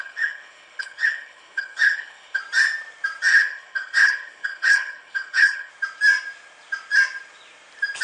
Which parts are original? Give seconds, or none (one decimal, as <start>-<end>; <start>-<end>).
2.4-3.3; 5.7-8.0